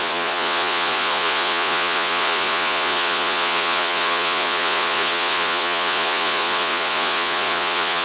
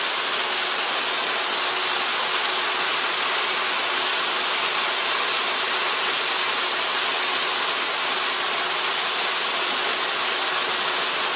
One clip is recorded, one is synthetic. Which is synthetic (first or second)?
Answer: first